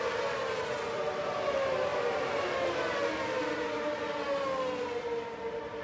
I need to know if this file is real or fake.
real